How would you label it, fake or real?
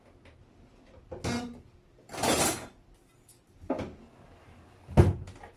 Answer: real